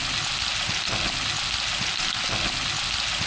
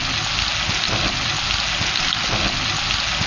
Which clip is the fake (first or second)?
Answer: first